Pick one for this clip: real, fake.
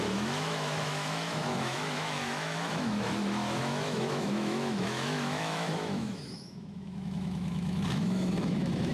fake